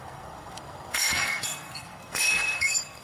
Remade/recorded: remade